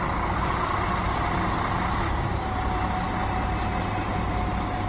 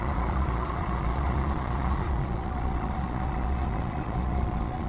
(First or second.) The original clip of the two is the first